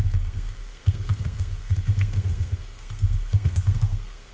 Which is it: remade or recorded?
remade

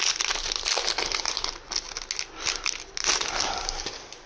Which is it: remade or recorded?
recorded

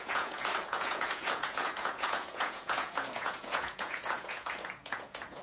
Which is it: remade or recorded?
remade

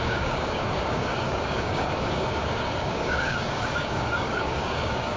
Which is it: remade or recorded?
remade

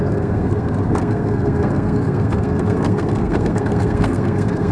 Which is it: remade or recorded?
remade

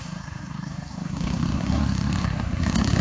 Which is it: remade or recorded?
remade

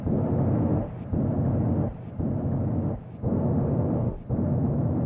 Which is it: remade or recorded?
recorded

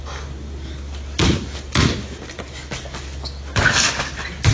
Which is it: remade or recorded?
recorded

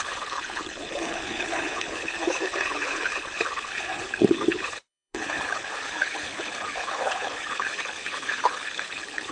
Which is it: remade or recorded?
remade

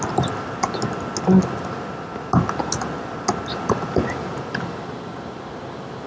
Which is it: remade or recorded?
recorded